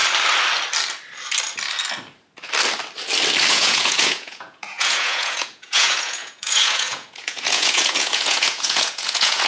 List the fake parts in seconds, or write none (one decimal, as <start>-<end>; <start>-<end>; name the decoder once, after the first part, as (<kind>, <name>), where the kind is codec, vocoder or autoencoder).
3.5-9.5 (vocoder, Vocos)